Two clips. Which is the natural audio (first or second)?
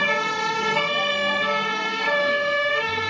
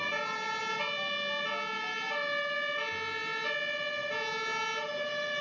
second